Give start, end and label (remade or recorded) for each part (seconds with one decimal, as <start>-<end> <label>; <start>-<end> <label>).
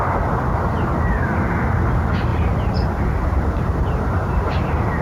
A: 0.0-2.3 recorded; 2.3-5.0 remade